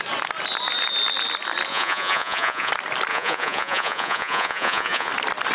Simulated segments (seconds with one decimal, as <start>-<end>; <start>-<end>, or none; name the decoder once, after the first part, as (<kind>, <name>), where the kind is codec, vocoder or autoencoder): 1.7-2.7 (vocoder, Vocos); 3.1-5.1